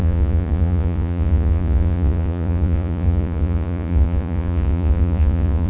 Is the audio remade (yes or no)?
yes